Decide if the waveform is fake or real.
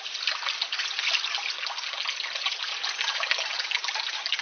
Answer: fake